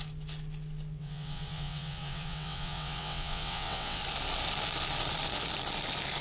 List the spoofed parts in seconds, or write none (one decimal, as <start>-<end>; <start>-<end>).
0.9-4.0